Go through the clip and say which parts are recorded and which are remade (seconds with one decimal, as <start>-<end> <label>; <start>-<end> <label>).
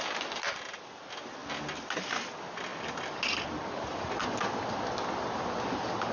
0.0-6.1 recorded